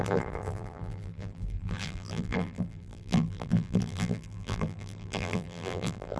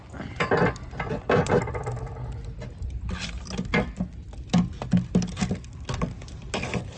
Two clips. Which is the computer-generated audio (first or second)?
first